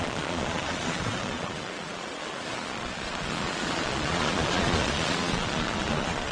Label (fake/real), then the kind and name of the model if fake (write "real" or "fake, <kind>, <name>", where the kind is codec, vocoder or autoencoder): fake, vocoder, Vocos